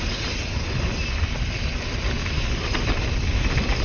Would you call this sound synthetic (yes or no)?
no